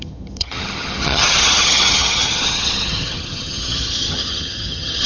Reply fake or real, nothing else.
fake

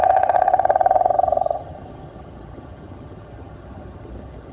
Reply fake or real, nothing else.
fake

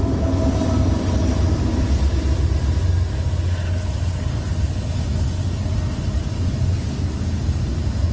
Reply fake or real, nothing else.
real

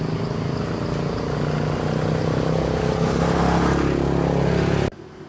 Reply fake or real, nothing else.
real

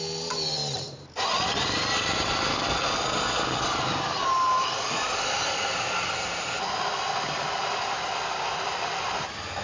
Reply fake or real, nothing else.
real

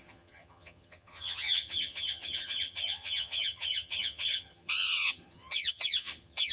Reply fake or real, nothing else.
fake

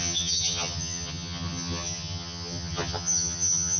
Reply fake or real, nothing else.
fake